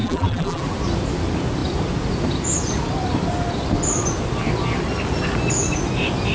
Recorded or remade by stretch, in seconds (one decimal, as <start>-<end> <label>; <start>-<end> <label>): 0.0-0.6 remade; 0.6-6.3 recorded